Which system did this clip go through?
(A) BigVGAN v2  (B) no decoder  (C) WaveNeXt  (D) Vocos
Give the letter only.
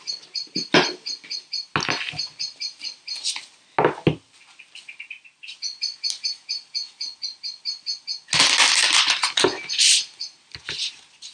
B